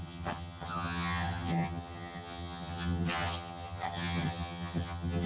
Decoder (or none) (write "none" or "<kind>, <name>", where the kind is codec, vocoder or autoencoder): vocoder, HiFi-GAN